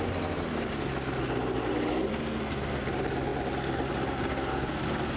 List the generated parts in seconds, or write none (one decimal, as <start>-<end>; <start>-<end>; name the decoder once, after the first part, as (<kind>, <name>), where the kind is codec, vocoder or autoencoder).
2.1-2.8 (codec, SNAC); 4.3-5.2